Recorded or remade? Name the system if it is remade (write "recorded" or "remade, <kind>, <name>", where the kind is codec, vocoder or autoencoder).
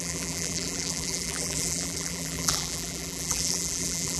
remade, vocoder, BigVGAN v2